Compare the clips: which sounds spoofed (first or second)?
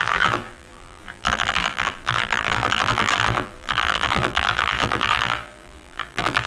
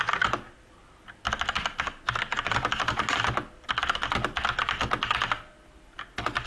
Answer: first